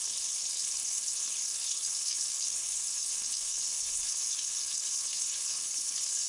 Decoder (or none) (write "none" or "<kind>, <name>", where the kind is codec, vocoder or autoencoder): codec, HILCodec